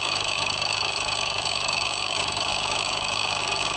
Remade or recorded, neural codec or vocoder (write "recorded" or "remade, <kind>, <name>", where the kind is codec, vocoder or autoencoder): remade, codec, DAC